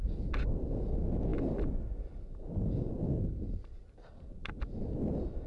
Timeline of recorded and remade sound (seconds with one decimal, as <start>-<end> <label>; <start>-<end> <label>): 0.0-5.5 recorded